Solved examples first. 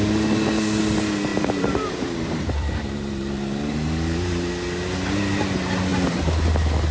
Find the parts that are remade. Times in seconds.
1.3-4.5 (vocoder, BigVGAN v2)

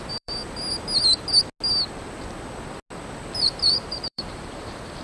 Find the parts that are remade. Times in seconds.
0.0-0.4 (vocoder, BigVGAN v2); 3.4-5.0